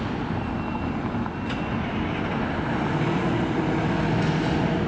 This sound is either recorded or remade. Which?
recorded